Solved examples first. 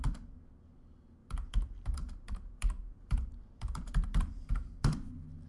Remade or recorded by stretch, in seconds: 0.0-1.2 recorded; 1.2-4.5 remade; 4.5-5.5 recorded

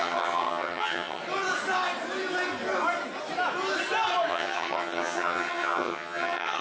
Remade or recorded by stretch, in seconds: 0.0-1.2 remade; 1.2-4.3 recorded; 4.3-6.6 remade

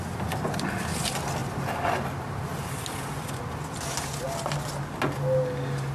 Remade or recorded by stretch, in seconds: 0.0-5.9 recorded

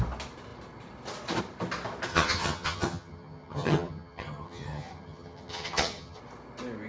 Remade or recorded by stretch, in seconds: 0.0-2.1 recorded; 2.1-6.2 remade; 6.2-6.9 recorded

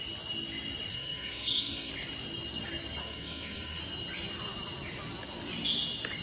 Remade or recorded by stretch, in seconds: 0.0-0.9 recorded; 0.9-1.9 remade; 1.9-3.0 recorded; 3.0-3.8 remade; 3.8-6.2 recorded

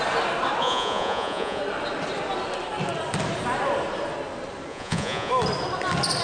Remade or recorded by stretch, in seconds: 0.0-0.6 recorded; 0.6-1.6 remade; 1.6-4.7 recorded; 4.7-5.3 remade; 5.3-6.2 recorded

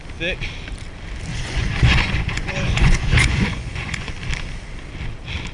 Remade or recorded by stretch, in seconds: 0.0-1.3 recorded; 1.3-4.1 remade; 4.1-5.5 recorded